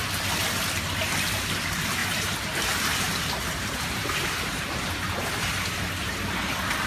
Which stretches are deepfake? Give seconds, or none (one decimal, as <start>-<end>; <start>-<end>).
2.0-6.1

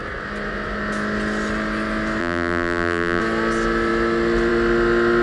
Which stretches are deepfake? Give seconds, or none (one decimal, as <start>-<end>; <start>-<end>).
2.2-3.2

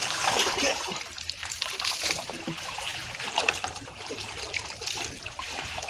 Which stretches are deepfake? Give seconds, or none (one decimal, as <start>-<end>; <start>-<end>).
0.0-5.9

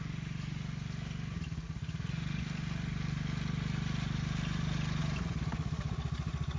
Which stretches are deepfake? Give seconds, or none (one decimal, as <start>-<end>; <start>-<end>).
5.0-5.9